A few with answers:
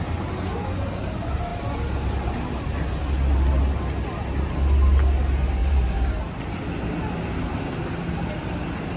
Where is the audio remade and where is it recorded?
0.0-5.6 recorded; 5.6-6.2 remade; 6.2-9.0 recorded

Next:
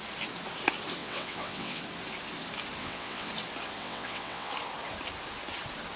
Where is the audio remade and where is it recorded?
0.0-1.0 recorded; 1.0-1.8 remade; 1.8-2.8 recorded; 2.8-3.3 remade; 3.3-3.8 recorded; 3.8-4.5 remade; 4.5-6.0 recorded

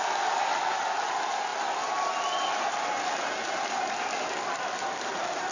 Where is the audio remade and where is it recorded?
0.0-5.5 recorded

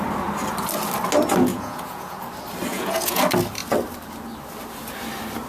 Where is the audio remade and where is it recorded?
0.0-1.5 recorded; 1.5-2.2 remade; 2.2-2.7 recorded; 2.7-3.2 remade; 3.2-5.5 recorded

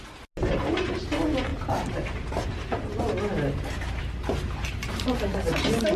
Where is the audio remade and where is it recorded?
0.0-6.0 recorded